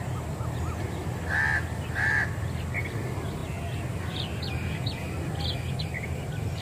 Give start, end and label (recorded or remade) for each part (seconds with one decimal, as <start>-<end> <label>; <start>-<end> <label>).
0.0-6.6 recorded